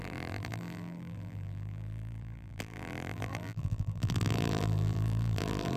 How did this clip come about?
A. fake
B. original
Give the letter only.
A